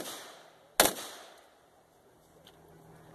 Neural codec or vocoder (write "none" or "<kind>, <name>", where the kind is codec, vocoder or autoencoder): none